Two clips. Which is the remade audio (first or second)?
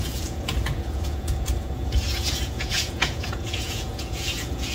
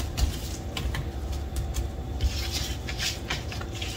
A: first